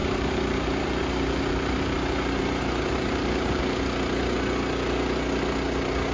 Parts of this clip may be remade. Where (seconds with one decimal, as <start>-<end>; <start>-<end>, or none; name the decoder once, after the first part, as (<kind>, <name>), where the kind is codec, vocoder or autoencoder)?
0.0-3.6 (vocoder, BigVGAN v2)